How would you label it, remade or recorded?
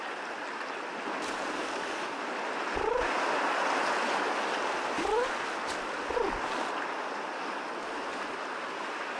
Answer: recorded